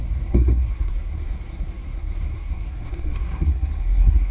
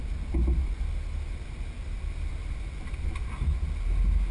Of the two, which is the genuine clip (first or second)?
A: second